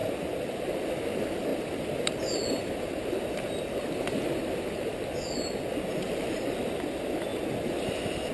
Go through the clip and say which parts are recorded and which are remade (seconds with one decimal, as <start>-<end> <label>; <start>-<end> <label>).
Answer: 0.0-8.3 recorded